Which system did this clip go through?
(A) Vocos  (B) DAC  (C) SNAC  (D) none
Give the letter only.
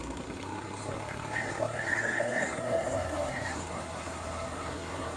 C